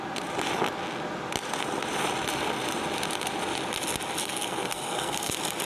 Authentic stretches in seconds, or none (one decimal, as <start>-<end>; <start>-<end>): 0.0-4.2; 5.3-5.7